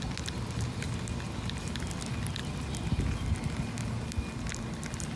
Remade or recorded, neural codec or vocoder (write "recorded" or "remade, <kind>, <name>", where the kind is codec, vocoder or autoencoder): recorded